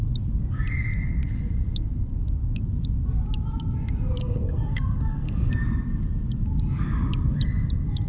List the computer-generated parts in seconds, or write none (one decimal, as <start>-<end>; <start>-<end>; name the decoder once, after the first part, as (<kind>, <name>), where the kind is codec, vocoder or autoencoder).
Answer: 4.2-5.5 (codec, SNAC)